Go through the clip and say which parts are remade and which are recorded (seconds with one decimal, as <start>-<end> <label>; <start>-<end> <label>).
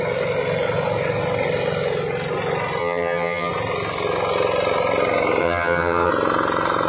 0.0-2.8 recorded; 2.8-3.5 remade; 3.5-5.4 recorded; 5.4-6.1 remade; 6.1-6.9 recorded